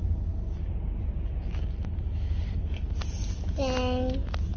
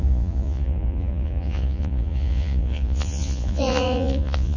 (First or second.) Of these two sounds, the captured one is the first